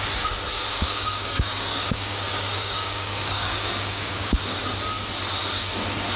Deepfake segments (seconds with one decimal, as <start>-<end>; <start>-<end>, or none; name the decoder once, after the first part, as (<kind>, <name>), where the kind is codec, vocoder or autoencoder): 0.7-4.4 (codec, DAC)